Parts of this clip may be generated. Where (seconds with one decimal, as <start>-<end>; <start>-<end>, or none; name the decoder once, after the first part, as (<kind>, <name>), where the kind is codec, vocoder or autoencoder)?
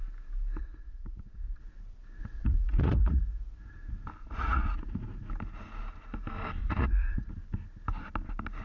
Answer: 0.6-1.6 (vocoder, Vocos); 2.2-3.2; 4.2-5.0; 6.6-7.3